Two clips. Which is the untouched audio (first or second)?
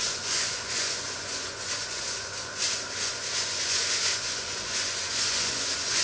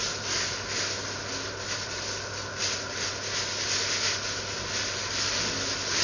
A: second